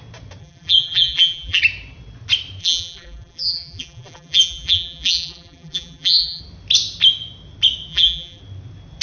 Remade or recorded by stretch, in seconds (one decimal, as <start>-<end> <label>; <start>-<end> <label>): 0.0-0.4 recorded; 0.4-1.6 remade; 1.6-2.6 recorded; 2.6-6.4 remade; 6.4-7.9 recorded; 7.9-8.4 remade; 8.4-9.0 recorded